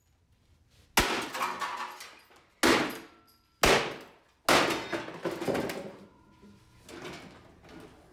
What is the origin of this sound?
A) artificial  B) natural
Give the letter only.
B